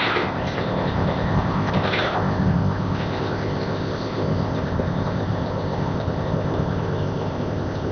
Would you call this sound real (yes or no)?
no